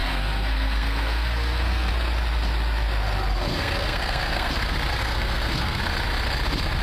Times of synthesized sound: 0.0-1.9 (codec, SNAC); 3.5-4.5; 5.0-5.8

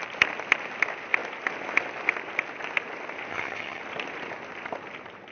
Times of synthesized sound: 3.3-3.8 (vocoder, HiFi-GAN)

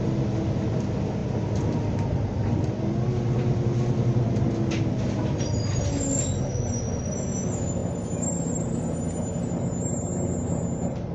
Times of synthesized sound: none

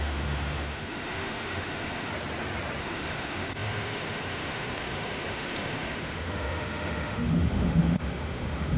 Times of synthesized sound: 0.0-2.1 (autoencoder, DAC-VAE); 2.8-8.8